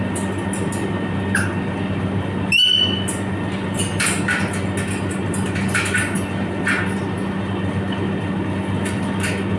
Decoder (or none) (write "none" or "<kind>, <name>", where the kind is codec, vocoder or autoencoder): none